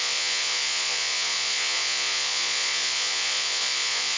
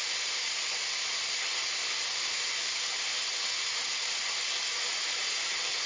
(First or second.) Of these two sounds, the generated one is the first